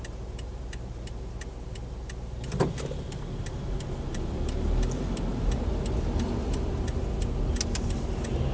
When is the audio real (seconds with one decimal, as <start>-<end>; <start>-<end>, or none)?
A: 0.0-8.5